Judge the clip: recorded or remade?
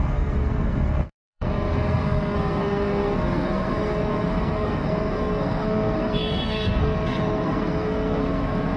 remade